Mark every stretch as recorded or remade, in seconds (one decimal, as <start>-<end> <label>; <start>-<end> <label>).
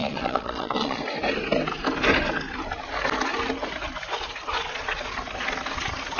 0.0-1.0 remade; 1.0-4.3 recorded; 4.3-5.1 remade; 5.1-6.2 recorded